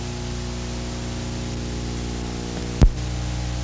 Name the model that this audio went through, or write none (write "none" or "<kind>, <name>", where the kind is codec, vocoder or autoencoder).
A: none